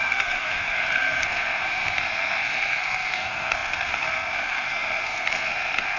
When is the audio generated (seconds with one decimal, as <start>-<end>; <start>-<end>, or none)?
0.0-6.0